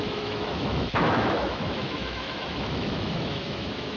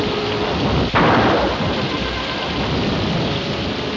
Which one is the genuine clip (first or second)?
second